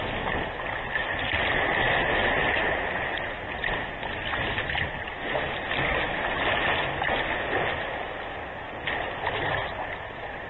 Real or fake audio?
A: real